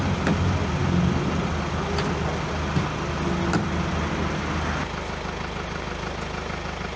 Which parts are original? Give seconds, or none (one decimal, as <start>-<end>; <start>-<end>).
0.0-7.0